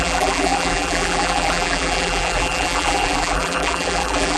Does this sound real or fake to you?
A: fake